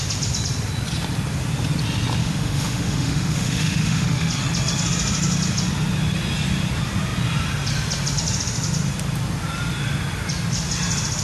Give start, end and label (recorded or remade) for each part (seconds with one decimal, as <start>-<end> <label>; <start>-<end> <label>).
0.0-2.2 recorded; 2.2-4.3 remade; 4.3-11.2 recorded